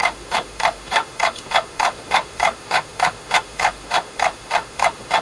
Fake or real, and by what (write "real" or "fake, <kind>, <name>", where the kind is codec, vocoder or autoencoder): fake, autoencoder, DAC-VAE